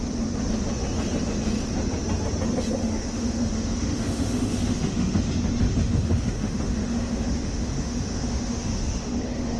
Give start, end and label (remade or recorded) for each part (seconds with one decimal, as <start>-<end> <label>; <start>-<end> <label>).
0.0-2.8 recorded; 2.8-5.3 remade; 5.3-5.7 recorded; 5.7-9.6 remade